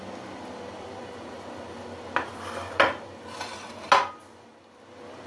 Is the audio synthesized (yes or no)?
no